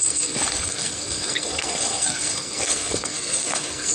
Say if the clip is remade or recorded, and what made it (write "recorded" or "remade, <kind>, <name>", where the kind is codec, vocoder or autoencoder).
remade, codec, SNAC